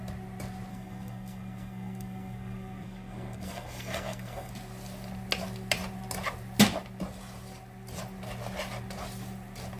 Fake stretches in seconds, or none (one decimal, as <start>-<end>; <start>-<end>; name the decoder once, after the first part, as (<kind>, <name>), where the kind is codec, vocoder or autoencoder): 0.7-4.5 (codec, SNAC)